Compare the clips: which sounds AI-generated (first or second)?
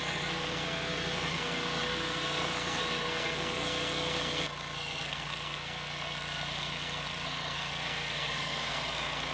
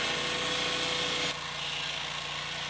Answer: first